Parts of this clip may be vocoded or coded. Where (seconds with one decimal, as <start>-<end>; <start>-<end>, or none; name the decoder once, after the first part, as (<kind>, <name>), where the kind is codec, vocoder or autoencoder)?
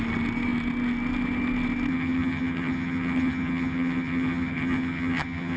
1.9-5.6 (vocoder, HiFi-GAN)